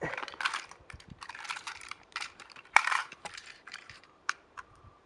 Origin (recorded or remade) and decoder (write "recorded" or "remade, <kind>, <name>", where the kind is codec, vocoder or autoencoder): remade, vocoder, BigVGAN v2